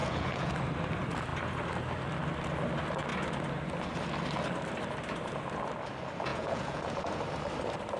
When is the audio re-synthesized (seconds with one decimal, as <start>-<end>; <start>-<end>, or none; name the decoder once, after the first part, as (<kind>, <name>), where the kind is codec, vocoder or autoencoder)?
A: 0.0-0.5 (vocoder, Vocos); 6.3-7.1